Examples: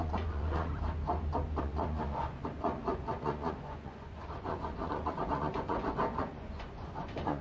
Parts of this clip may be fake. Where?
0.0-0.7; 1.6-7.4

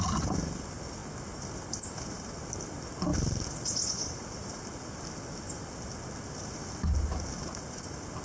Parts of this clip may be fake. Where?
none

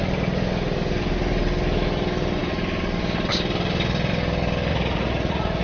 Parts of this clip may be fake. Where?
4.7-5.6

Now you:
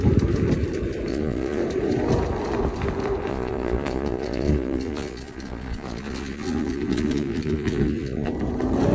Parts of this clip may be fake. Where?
1.1-1.6; 3.3-8.3

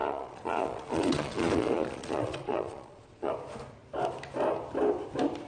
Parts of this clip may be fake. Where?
0.0-3.3

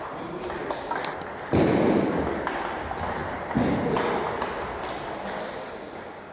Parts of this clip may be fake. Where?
none

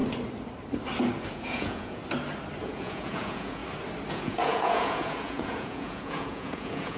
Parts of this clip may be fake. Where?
1.3-2.0; 2.6-3.6; 4.1-7.0

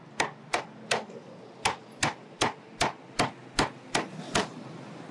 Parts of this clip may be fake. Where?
none